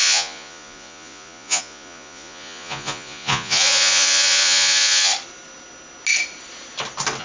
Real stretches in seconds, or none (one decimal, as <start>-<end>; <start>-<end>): 5.1-7.2